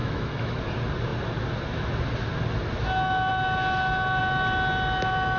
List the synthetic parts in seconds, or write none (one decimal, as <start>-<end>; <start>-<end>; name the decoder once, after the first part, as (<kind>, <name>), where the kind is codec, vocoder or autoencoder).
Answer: 0.0-0.6 (autoencoder, DAC-VAE)